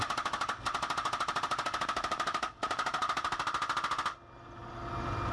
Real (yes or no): yes